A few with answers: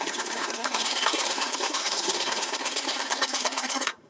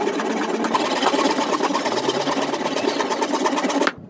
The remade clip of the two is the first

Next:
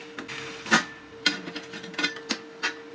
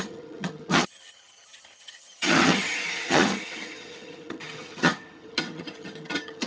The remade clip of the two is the second